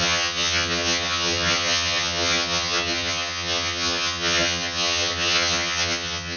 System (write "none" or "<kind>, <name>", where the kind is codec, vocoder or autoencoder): vocoder, HiFi-GAN